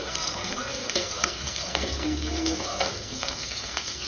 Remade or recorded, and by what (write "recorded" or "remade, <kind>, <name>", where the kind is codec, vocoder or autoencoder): remade, codec, SNAC